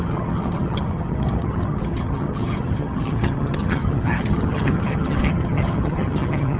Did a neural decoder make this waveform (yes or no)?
yes